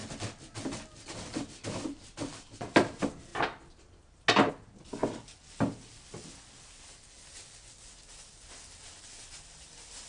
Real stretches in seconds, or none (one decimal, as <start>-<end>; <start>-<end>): 0.0-10.1